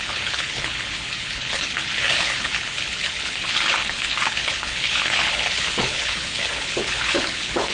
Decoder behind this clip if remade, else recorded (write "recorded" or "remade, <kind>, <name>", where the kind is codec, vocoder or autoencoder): remade, codec, HILCodec